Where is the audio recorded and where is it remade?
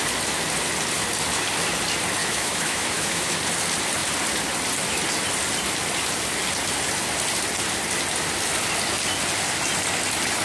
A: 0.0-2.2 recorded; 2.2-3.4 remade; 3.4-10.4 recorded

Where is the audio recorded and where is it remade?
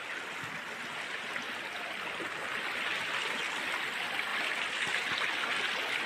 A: 0.0-6.1 recorded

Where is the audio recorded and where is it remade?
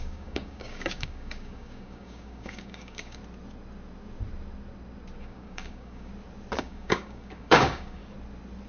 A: 0.0-3.2 remade; 3.2-5.2 recorded; 5.2-6.1 remade; 6.1-6.6 recorded; 6.6-8.0 remade; 8.0-8.7 recorded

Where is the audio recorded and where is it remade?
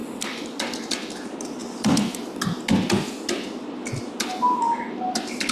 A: 0.0-5.5 recorded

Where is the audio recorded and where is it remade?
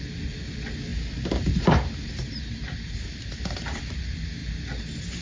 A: 0.0-0.9 recorded; 0.9-4.0 remade; 4.0-5.2 recorded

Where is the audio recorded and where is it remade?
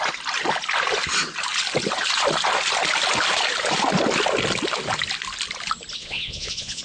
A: 0.0-6.0 recorded; 6.0-6.8 remade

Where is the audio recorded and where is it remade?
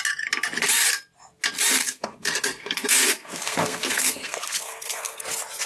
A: 0.0-1.8 recorded; 1.8-5.2 remade; 5.2-5.7 recorded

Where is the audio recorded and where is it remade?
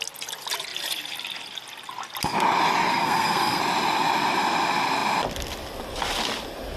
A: 0.0-2.9 recorded; 2.9-3.6 remade; 3.6-6.8 recorded